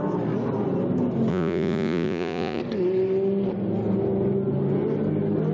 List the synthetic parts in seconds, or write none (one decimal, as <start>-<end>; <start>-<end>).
1.3-2.6